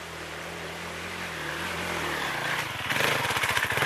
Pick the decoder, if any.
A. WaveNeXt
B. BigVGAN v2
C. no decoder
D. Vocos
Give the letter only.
B